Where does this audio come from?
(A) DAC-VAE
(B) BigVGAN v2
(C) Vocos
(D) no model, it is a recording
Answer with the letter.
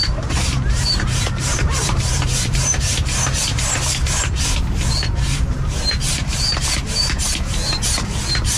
B